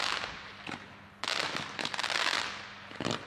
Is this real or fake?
real